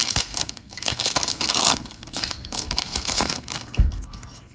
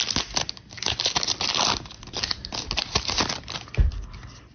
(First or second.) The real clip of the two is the second